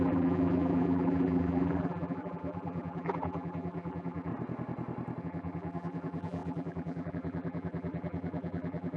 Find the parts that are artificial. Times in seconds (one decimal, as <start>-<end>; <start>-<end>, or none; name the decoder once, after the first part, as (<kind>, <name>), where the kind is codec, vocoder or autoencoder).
0.0-4.3 (vocoder, BigVGAN v2); 5.2-9.0